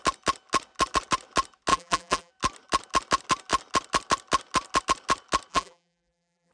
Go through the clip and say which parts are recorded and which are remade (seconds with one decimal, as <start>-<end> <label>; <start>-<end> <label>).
0.0-1.7 recorded; 1.7-2.3 remade; 2.3-5.5 recorded; 5.5-6.5 remade